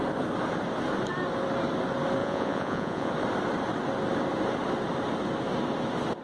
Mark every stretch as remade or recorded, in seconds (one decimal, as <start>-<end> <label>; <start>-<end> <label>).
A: 0.0-2.2 recorded; 2.2-3.1 remade; 3.1-6.2 recorded